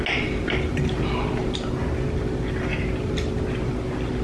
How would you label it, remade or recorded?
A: recorded